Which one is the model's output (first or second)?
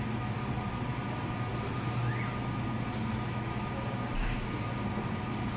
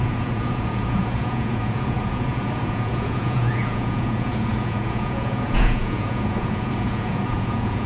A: second